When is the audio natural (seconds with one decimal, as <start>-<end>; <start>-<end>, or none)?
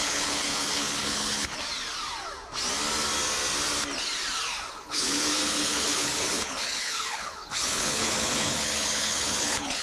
1.6-4.7